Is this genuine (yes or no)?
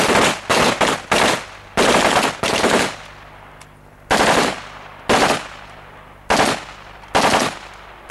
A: yes